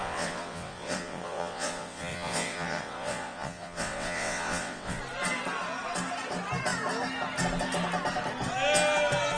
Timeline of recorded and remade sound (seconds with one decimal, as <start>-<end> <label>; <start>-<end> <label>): 0.0-5.0 remade; 5.0-9.4 recorded